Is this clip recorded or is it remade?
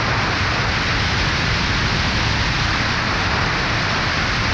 recorded